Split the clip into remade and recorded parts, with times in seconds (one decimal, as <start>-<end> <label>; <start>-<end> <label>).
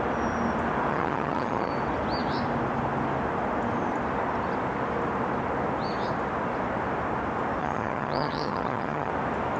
0.0-0.9 recorded; 0.9-1.7 remade; 1.7-7.6 recorded; 7.6-9.1 remade; 9.1-9.6 recorded